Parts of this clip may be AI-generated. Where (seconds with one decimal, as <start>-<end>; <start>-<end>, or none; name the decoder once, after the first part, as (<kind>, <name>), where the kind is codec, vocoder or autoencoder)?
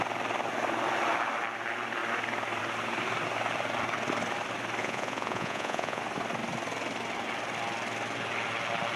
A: 4.8-6.0 (vocoder, Vocos)